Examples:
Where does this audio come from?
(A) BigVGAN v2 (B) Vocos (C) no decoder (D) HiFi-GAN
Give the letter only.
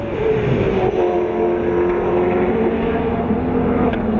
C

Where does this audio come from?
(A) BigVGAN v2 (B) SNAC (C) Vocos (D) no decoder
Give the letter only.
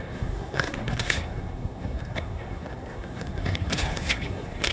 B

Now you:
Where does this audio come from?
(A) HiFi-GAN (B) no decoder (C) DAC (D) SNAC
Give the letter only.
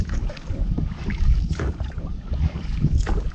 C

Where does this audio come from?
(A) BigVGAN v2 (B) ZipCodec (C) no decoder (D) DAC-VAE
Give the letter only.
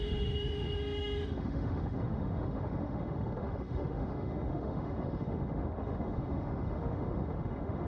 D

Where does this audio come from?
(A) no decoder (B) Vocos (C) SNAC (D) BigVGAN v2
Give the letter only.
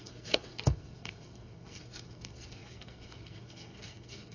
C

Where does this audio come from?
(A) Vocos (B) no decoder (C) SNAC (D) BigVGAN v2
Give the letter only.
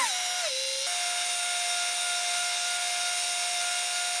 B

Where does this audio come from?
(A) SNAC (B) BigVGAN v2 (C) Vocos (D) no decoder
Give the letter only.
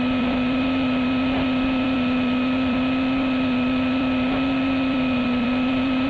B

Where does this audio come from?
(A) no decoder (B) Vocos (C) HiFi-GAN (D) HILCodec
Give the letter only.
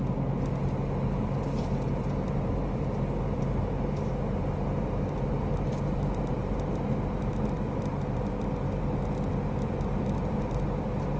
A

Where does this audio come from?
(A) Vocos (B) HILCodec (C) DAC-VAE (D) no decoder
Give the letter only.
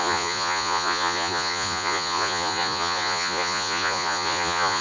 A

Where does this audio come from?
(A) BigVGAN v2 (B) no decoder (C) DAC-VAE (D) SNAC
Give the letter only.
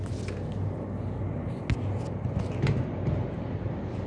B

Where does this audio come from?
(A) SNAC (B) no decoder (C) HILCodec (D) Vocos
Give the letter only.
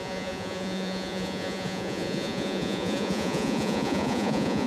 D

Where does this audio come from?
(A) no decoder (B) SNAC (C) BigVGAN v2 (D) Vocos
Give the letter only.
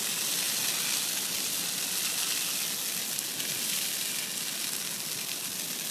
A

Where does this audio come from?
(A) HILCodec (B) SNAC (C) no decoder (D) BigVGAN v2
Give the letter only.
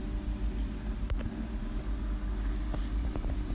C